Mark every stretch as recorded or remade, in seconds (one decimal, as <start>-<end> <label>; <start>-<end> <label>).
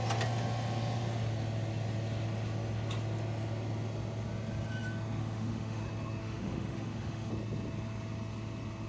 0.0-5.2 recorded; 5.2-5.8 remade; 5.8-6.2 recorded; 6.2-7.3 remade; 7.3-8.9 recorded